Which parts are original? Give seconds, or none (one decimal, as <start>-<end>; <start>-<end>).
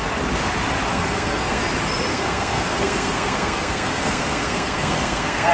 0.0-0.9; 1.6-2.1